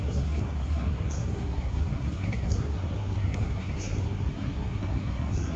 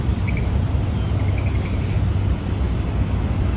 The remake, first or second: first